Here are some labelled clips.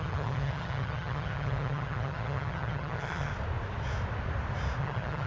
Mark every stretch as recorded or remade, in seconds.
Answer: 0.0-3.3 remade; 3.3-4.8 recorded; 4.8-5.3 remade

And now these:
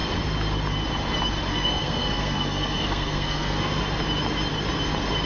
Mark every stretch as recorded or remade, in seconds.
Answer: 0.0-1.5 recorded; 1.5-3.8 remade; 3.8-5.3 recorded

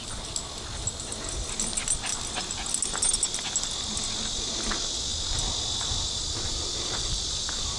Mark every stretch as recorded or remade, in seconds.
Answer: 0.0-7.8 recorded

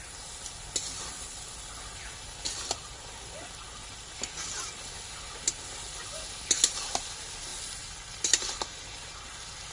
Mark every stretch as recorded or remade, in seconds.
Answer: 0.0-9.7 recorded